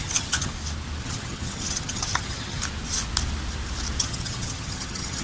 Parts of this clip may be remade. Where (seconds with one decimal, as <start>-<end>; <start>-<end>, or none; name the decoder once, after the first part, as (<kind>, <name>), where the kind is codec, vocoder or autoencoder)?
0.0-0.5 (vocoder, HiFi-GAN); 1.0-2.6; 4.0-5.2